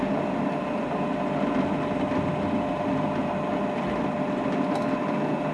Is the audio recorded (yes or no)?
yes